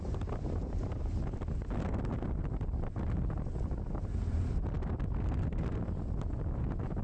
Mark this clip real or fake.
real